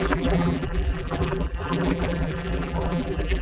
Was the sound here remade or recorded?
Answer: remade